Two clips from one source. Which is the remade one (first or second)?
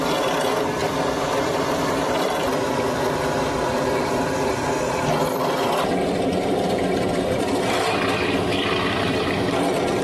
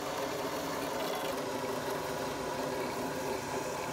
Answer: first